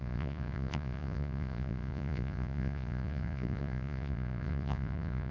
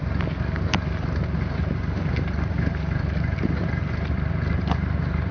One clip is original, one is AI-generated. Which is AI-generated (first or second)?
first